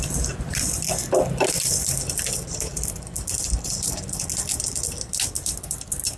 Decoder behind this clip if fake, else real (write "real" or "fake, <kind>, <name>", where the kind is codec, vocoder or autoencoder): real